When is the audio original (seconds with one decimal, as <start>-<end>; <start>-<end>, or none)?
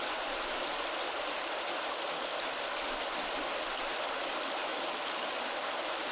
0.0-4.7